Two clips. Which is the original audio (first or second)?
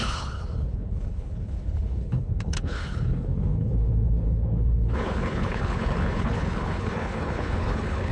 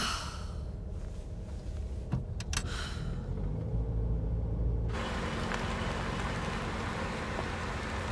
second